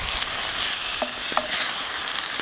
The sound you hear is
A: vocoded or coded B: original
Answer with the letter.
B